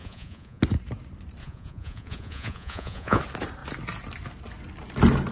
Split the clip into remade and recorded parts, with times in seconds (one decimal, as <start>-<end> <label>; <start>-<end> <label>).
0.0-0.6 remade; 0.6-1.4 recorded; 1.4-3.2 remade; 3.2-5.3 recorded